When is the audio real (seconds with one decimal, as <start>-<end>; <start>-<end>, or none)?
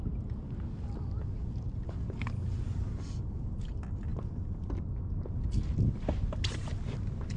0.0-7.4